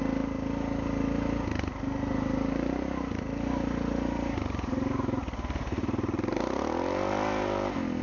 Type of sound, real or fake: real